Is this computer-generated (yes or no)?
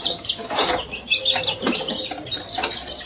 no